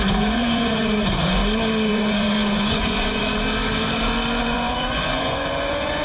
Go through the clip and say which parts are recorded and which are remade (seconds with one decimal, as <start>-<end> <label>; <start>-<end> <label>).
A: 0.0-1.4 remade; 1.4-1.9 recorded; 1.9-3.2 remade; 3.2-4.4 recorded; 4.4-6.0 remade